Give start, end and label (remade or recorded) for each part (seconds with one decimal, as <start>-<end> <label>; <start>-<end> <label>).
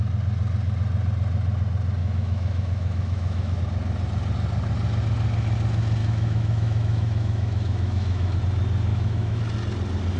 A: 0.0-2.0 recorded; 2.0-3.6 remade; 3.6-6.0 recorded; 6.0-8.4 remade; 8.4-8.9 recorded; 8.9-9.4 remade; 9.4-10.2 recorded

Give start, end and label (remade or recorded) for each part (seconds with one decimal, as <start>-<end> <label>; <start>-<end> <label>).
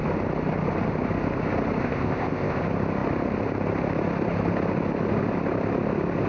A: 0.0-1.8 recorded; 1.8-2.6 remade; 2.6-6.3 recorded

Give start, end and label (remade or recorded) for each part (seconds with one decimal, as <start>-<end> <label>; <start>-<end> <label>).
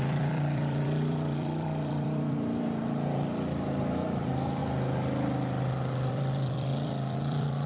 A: 0.0-4.6 remade; 4.6-6.1 recorded; 6.1-7.7 remade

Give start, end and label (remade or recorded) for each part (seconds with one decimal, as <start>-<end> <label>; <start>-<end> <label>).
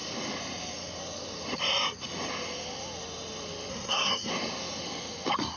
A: 0.0-3.7 recorded; 3.7-4.3 remade; 4.3-5.6 recorded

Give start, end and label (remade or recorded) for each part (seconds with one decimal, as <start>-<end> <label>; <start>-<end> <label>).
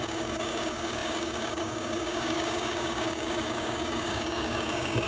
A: 0.0-5.1 remade